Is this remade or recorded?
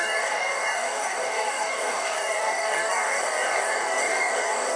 remade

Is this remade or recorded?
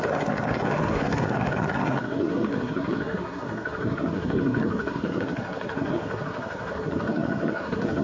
remade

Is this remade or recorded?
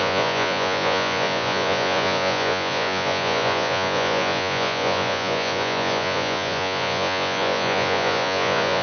remade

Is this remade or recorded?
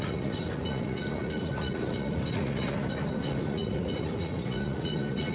remade